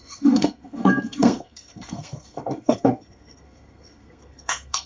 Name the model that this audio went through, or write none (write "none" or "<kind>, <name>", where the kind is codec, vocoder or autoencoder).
codec, SNAC